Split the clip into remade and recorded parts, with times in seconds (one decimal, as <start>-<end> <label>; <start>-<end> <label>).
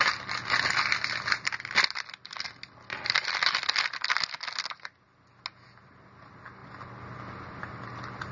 0.0-8.3 recorded